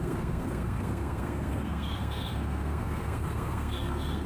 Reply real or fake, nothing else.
fake